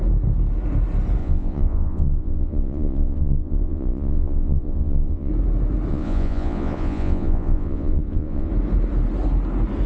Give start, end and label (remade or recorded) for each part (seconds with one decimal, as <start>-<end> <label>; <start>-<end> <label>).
0.0-1.2 recorded; 1.2-5.3 remade; 5.3-5.9 recorded; 5.9-8.5 remade; 8.5-9.9 recorded